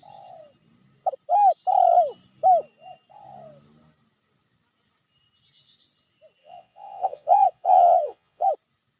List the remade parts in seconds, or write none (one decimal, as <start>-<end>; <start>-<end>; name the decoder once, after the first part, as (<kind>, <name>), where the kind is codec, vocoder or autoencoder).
6.4-8.5 (vocoder, Vocos)